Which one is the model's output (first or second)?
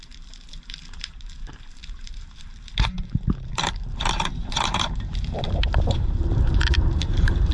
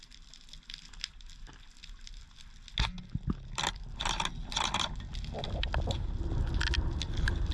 first